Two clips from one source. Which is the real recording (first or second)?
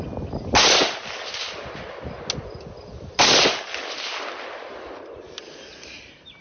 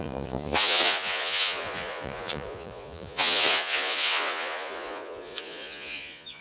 first